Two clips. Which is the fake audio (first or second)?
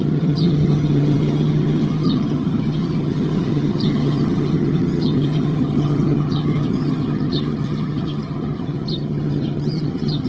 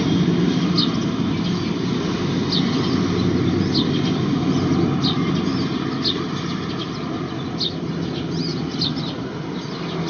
first